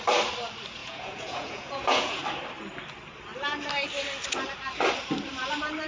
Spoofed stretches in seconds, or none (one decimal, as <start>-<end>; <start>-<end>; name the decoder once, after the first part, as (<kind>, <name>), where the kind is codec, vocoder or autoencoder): 0.8-2.2 (vocoder, Vocos)

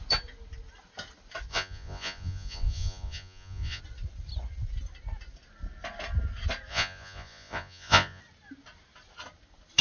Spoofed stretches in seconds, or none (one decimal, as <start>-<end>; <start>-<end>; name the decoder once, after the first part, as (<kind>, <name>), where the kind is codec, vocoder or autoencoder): 1.5-3.8 (vocoder, Vocos); 6.7-8.2

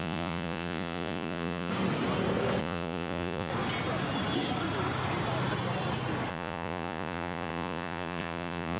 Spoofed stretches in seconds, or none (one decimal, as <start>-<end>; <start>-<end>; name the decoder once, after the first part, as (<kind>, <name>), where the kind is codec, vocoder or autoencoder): 0.0-1.7 (vocoder, Vocos); 2.6-3.5; 6.3-8.8